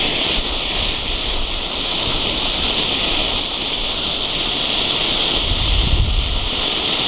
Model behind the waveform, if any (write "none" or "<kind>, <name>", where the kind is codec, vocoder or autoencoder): none